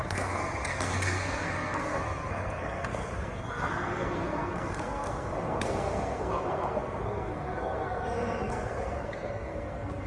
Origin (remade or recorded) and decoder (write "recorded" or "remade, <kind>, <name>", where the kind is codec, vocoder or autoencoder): remade, codec, SNAC